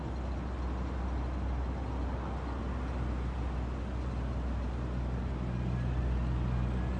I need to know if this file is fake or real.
real